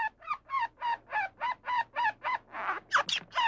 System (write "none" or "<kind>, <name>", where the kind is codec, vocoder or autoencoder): none